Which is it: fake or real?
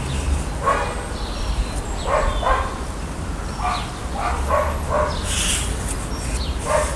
real